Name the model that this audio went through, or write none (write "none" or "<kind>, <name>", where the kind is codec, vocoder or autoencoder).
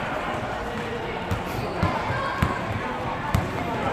none